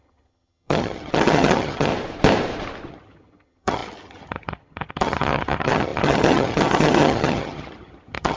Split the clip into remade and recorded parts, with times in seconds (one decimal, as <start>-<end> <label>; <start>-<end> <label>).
0.0-1.9 remade; 1.9-2.9 recorded; 2.9-8.4 remade